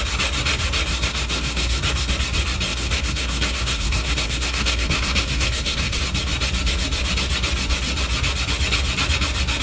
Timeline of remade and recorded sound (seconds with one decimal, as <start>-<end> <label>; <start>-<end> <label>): 0.0-0.9 recorded; 0.9-2.1 remade; 2.1-2.7 recorded; 2.7-6.0 remade; 6.0-9.6 recorded